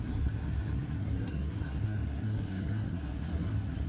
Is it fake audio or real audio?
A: fake